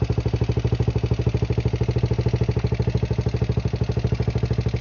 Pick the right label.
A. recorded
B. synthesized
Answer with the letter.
A